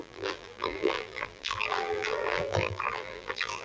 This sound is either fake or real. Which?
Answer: fake